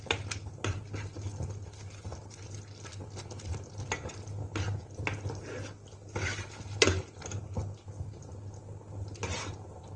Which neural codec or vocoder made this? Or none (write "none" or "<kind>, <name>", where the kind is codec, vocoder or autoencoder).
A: none